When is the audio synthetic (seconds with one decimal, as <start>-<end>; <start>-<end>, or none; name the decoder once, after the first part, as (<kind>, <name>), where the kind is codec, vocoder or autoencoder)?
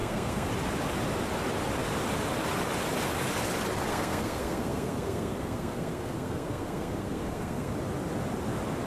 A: 0.0-0.5 (codec, SNAC); 3.9-7.7